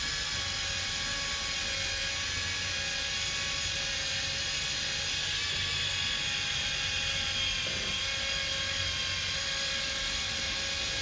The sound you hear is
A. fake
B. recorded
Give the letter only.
B